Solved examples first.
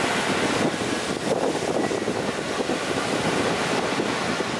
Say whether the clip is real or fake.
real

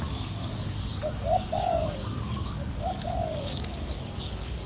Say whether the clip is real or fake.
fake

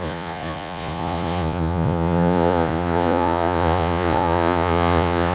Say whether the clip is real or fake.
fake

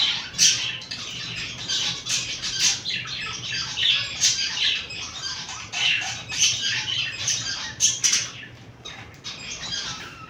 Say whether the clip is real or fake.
fake